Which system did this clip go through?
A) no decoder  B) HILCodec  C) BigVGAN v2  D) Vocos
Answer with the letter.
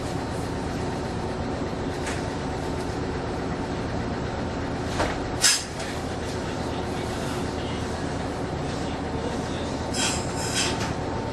C